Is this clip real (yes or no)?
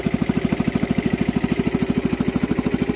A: yes